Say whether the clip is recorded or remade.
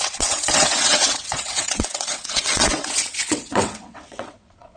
remade